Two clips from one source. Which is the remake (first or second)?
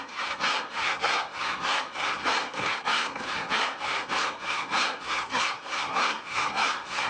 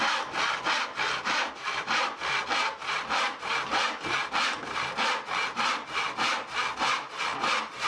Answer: first